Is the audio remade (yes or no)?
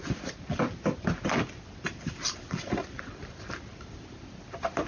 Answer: no